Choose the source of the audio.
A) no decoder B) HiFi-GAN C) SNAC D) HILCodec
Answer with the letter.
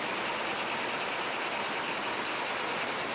A